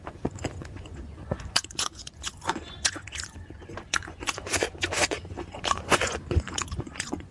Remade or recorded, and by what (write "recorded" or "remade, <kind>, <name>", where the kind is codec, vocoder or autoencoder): remade, vocoder, Vocos